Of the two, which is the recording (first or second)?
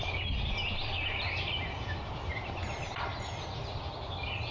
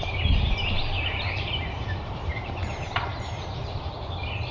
first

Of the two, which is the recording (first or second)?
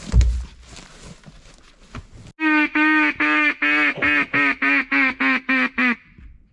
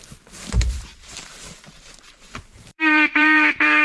first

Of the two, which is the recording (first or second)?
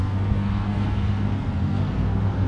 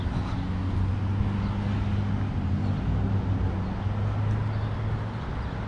second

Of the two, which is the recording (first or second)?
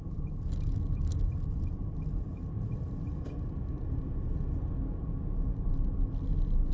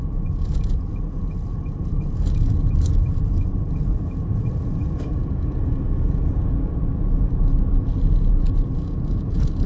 first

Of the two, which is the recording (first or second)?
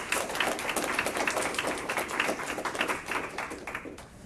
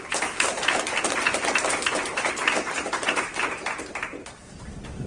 first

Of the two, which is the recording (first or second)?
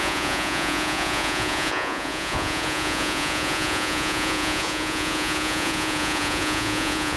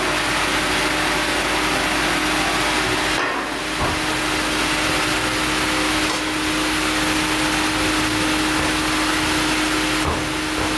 second